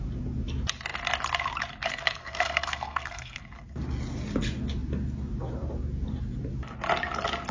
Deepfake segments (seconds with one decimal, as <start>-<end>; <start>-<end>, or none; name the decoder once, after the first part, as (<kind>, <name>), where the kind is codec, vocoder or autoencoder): 2.2-3.4 (codec, SNAC)